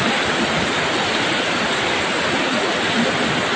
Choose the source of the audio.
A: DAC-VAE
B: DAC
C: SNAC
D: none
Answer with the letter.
D